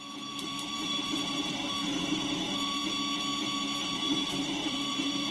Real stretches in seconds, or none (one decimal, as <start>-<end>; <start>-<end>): 2.8-3.8